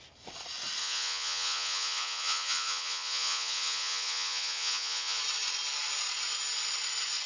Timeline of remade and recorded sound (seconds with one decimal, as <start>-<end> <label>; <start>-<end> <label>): 0.0-0.8 recorded; 0.8-5.2 remade; 5.2-7.3 recorded